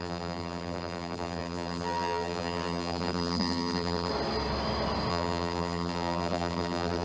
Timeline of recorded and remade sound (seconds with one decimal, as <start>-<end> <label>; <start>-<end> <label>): 0.0-4.1 remade; 4.1-5.1 recorded; 5.1-7.0 remade